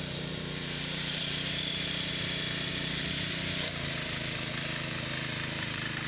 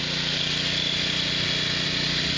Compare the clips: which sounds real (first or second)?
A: second